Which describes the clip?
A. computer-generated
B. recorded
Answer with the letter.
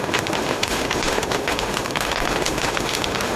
A